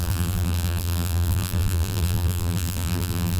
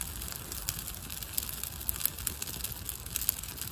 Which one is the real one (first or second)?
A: second